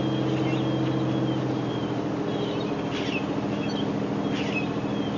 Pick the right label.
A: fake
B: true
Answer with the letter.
B